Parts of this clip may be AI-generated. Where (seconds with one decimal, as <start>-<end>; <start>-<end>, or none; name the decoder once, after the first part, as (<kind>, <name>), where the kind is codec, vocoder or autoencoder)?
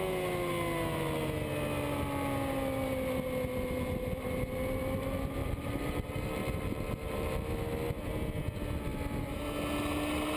5.4-7.5 (vocoder, BigVGAN v2)